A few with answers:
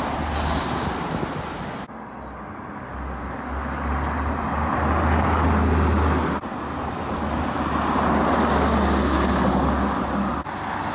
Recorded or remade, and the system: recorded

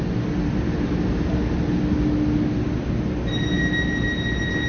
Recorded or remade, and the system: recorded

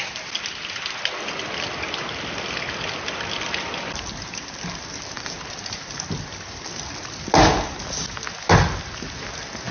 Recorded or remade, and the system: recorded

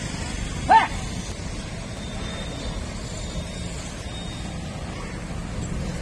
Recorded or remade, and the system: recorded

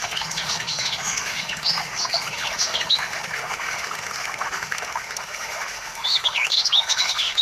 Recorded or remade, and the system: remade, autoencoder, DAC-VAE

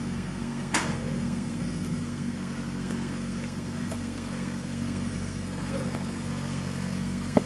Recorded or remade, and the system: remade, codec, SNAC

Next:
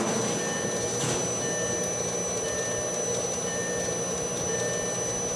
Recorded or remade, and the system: recorded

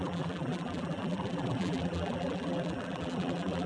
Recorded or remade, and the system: remade, vocoder, BigVGAN v2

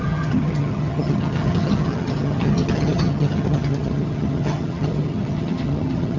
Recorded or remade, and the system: remade, vocoder, HiFi-GAN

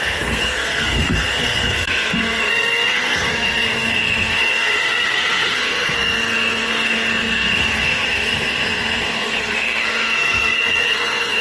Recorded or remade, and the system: remade, codec, SNAC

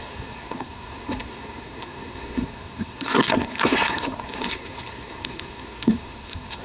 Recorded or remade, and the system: remade, codec, SNAC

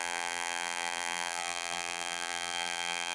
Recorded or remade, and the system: remade, vocoder, BigVGAN v2